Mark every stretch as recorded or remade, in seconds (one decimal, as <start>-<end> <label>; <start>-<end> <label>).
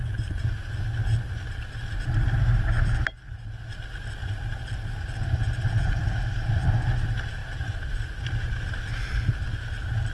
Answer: 0.0-10.1 recorded